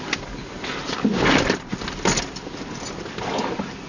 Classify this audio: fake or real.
real